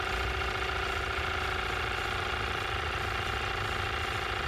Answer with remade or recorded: recorded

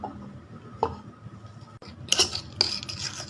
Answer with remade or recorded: recorded